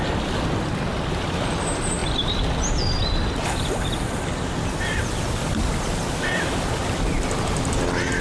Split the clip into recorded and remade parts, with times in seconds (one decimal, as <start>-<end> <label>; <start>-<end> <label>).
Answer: 0.0-8.2 recorded